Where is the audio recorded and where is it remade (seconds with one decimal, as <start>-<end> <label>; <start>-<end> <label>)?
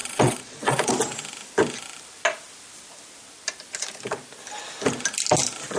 0.0-0.9 remade; 0.9-5.8 recorded